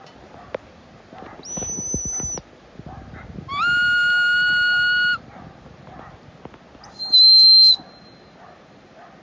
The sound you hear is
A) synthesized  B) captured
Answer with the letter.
B